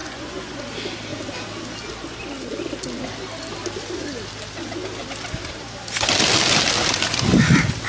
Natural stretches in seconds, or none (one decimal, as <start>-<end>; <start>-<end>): 0.6-7.9